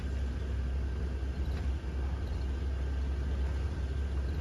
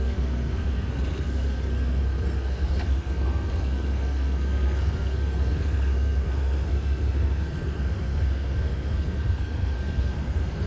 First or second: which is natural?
first